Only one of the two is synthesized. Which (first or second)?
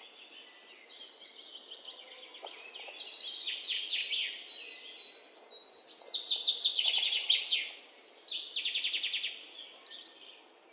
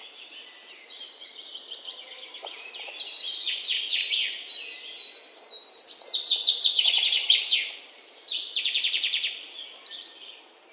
second